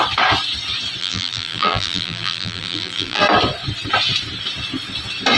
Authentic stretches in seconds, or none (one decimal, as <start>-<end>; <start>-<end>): 0.0-1.0; 3.2-5.4